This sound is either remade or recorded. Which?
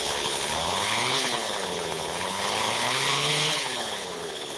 remade